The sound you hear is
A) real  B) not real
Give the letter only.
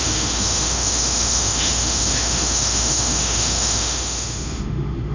B